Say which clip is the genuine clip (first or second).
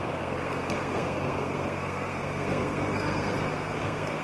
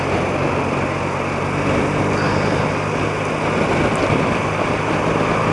second